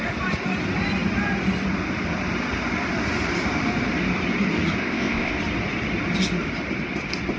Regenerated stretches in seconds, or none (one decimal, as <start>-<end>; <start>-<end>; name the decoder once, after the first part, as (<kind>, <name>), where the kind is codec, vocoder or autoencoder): 4.8-5.3 (codec, ZipCodec)